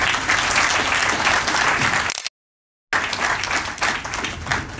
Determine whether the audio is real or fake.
real